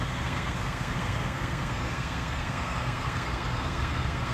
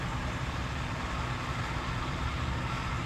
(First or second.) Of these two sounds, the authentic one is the second